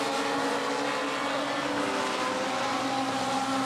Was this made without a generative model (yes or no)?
yes